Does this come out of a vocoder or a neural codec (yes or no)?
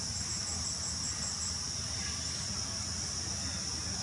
no